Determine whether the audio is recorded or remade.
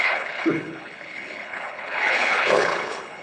remade